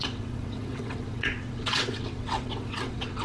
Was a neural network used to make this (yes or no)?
yes